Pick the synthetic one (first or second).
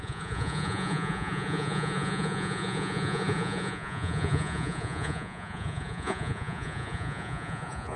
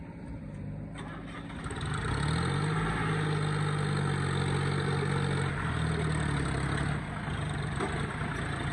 first